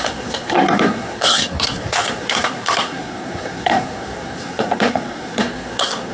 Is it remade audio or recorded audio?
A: remade